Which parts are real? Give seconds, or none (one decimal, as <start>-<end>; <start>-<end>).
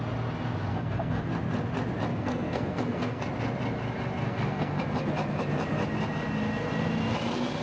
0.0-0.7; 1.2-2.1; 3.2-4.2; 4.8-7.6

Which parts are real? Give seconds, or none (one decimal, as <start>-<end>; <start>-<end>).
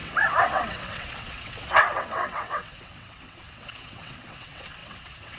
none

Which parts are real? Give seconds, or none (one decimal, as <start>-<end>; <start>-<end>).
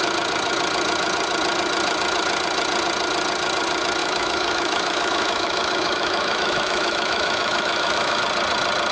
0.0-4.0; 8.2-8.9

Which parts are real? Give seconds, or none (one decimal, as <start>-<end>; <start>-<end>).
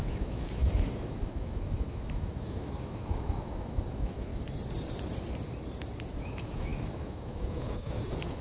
4.3-6.2